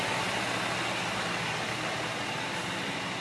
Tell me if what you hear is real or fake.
real